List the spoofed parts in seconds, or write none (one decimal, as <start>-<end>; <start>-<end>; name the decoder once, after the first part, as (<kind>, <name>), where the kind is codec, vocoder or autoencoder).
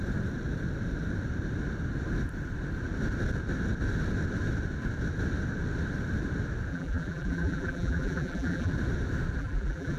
6.7-8.7 (vocoder, BigVGAN v2); 9.4-10.0